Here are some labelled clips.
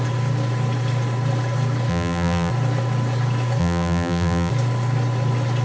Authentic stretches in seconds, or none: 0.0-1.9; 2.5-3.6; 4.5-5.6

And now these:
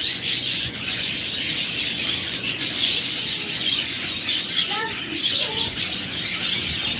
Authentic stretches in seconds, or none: 1.1-2.0; 6.2-7.0

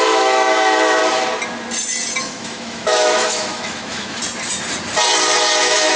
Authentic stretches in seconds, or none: 1.0-2.2; 4.2-5.6

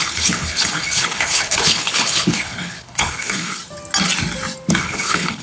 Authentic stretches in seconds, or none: 3.6-4.7

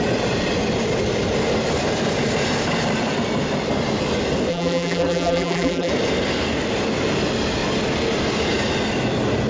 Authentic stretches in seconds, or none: 0.0-4.5; 5.9-9.5

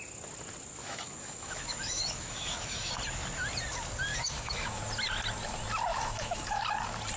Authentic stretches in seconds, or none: 0.0-0.8; 2.9-4.1; 4.8-5.9; 6.6-7.2

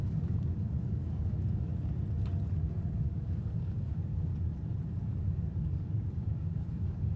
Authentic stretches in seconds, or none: 1.7-2.5; 4.3-5.0

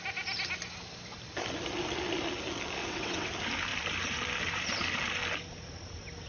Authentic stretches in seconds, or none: 0.0-2.8; 3.3-6.3